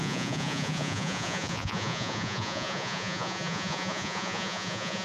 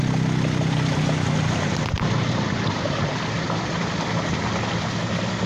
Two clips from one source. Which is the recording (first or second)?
second